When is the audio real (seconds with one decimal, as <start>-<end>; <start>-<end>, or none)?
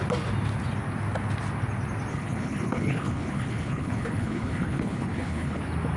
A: 0.0-2.1; 5.6-6.0